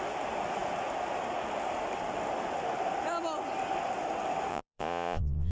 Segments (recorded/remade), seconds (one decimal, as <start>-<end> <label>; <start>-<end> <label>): 0.0-4.5 recorded; 4.5-5.5 remade

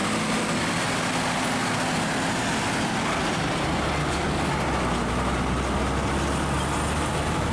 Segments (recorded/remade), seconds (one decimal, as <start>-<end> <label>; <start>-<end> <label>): 0.0-4.0 recorded; 4.0-4.5 remade; 4.5-7.5 recorded

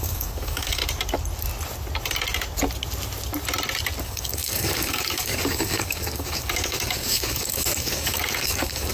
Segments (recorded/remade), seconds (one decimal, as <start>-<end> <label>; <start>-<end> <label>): 0.0-0.8 remade; 0.8-4.0 recorded; 4.0-8.9 remade